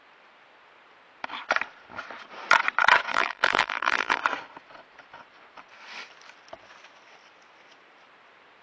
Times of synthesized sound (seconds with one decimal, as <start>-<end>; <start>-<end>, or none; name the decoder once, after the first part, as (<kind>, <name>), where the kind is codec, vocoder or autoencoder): 3.1-4.2 (vocoder, BigVGAN v2)